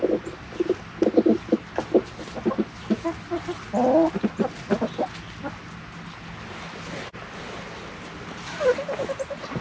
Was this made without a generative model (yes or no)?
yes